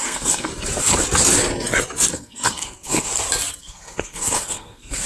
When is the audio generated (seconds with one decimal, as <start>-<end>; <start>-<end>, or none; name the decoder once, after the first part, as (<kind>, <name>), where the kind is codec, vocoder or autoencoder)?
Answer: 0.0-0.5 (codec, SNAC); 2.1-3.1; 3.6-5.1